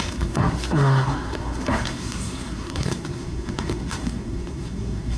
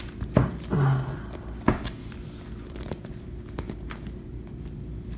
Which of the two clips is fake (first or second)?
first